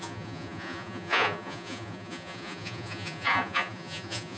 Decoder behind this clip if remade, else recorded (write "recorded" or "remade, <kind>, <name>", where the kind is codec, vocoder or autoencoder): remade, vocoder, Vocos